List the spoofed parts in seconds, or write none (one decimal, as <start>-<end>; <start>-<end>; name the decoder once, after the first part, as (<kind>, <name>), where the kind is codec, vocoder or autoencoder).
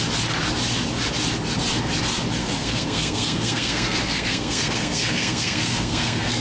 2.4-6.4 (codec, SNAC)